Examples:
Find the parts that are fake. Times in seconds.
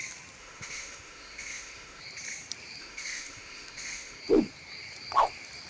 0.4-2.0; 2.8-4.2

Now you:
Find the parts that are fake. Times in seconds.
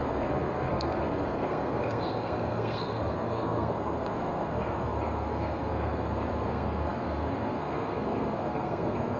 0.0-9.2